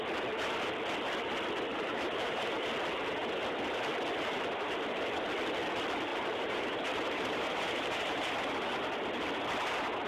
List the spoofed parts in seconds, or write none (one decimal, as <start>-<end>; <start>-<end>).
1.7-2.5; 6.1-8.3